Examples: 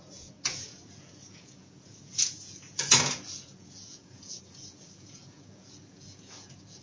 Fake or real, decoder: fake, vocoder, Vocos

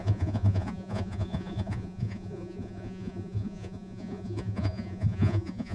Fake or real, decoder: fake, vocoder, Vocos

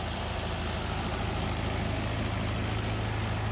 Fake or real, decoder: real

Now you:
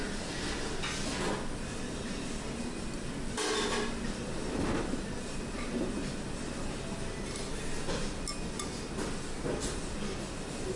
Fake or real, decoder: real